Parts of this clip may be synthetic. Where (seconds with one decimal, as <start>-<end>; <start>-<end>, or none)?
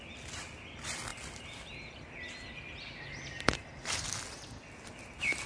none